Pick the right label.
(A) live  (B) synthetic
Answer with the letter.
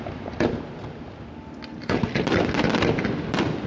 A